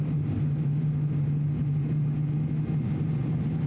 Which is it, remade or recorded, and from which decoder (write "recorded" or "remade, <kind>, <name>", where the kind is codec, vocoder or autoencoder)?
recorded